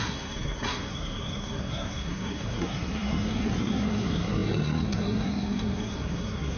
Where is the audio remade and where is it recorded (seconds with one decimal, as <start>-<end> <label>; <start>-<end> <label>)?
0.0-6.6 remade